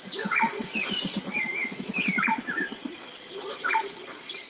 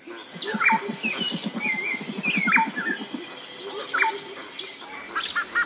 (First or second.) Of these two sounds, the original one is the second